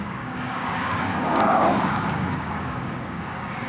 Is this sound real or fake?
fake